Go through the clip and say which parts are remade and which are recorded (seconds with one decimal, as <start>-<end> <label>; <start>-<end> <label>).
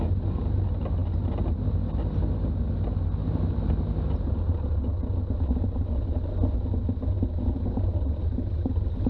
0.0-9.1 recorded